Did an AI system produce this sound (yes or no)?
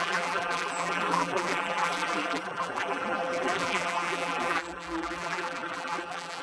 yes